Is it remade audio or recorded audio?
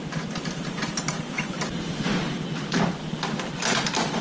recorded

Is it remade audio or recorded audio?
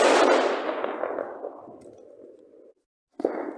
recorded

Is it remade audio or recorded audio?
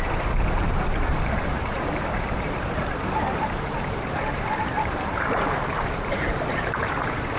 remade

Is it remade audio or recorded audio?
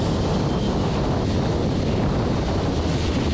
recorded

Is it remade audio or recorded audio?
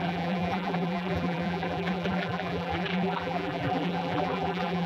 remade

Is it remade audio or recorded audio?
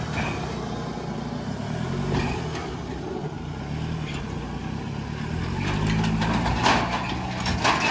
recorded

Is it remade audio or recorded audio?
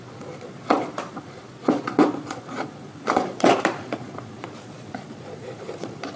remade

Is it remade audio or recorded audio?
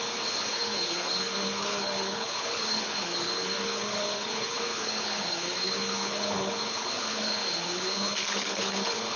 remade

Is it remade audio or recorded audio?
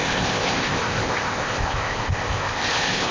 remade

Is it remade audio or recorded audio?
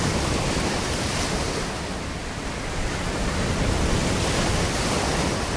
recorded